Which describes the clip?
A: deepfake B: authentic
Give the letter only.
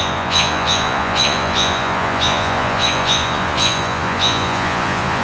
A